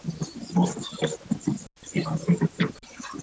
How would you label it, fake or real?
real